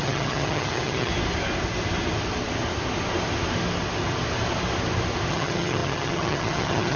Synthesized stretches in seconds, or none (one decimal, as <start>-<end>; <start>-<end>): 0.0-1.1; 5.3-7.0